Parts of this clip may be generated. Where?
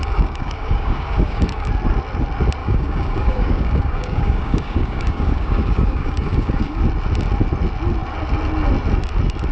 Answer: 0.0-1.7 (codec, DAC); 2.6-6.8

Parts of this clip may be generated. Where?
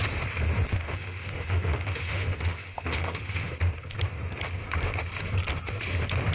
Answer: 0.7-3.5 (autoencoder, DAC-VAE)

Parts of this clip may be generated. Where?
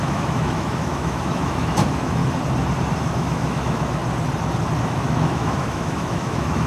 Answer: 0.0-2.2 (autoencoder, DAC-VAE); 3.0-4.0; 4.8-6.7